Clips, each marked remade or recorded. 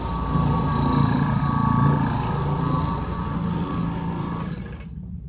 recorded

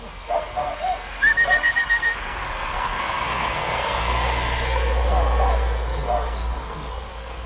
remade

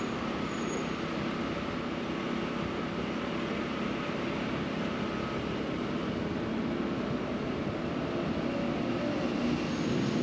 recorded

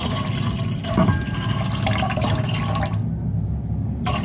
recorded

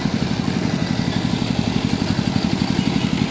recorded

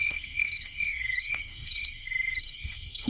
remade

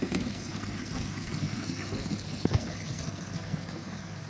remade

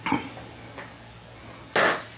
recorded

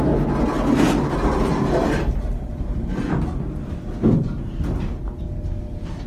recorded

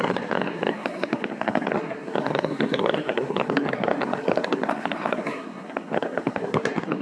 remade